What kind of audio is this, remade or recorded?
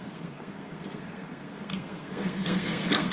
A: remade